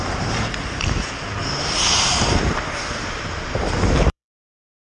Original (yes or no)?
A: no